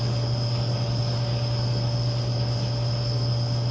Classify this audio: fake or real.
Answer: real